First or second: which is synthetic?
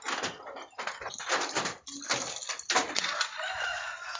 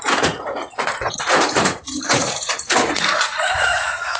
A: second